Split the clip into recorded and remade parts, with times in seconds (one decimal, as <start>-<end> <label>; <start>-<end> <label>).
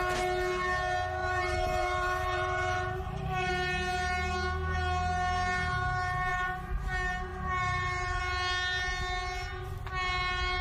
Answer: 0.0-1.2 recorded; 1.2-3.5 remade; 3.5-6.3 recorded; 6.3-6.8 remade; 6.8-7.3 recorded; 7.3-8.2 remade; 8.2-10.6 recorded